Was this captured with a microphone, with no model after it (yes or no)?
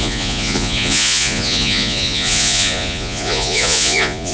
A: no